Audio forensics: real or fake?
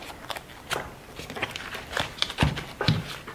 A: real